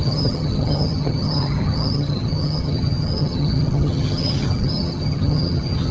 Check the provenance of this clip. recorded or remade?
remade